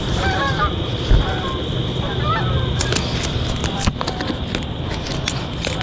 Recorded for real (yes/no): yes